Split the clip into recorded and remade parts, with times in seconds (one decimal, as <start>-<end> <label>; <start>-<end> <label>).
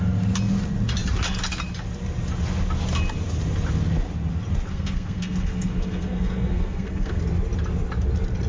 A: 0.0-4.7 recorded; 4.7-7.2 remade; 7.2-8.5 recorded